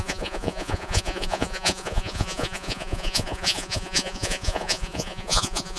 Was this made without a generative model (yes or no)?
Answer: no